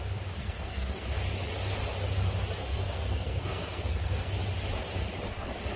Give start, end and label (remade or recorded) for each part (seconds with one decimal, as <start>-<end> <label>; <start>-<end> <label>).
0.0-0.4 recorded; 0.4-1.1 remade; 1.1-2.6 recorded; 2.6-4.3 remade; 4.3-5.8 recorded